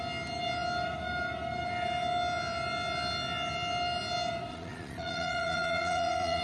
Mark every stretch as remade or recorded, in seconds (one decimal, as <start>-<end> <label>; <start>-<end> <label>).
0.0-4.5 recorded; 4.5-6.4 remade